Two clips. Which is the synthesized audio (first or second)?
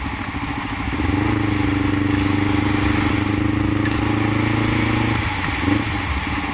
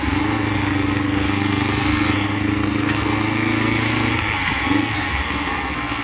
second